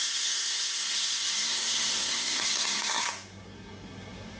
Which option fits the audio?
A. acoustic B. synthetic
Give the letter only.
B